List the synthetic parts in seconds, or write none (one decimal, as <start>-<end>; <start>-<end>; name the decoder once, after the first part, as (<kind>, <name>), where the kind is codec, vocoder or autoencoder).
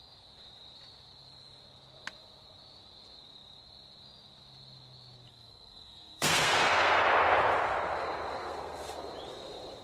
5.3-7.0 (codec, SNAC); 8.4-9.1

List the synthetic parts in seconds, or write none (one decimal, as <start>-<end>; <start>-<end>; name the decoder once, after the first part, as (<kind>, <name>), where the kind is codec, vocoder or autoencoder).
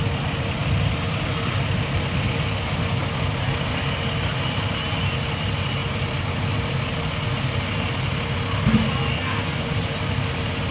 9.1-9.6 (codec, SNAC)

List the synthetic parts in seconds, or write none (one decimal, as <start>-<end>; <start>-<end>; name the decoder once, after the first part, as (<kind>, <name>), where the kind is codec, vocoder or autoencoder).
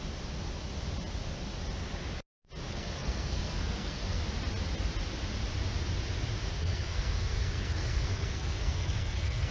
2.7-4.2 (codec, SNAC); 6.5-9.5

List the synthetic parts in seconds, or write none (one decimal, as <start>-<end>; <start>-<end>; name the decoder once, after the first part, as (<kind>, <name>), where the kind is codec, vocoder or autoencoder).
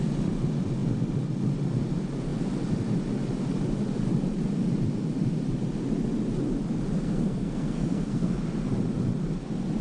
7.0-8.3 (codec, SNAC)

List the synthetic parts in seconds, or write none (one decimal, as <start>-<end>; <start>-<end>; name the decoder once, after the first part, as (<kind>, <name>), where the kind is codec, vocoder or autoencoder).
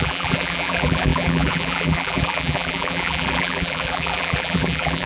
0.0-5.1 (vocoder, BigVGAN v2)